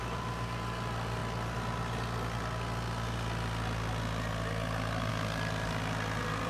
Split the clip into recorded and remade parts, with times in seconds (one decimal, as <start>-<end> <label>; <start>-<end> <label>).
0.0-1.2 remade; 1.2-5.1 recorded; 5.1-6.5 remade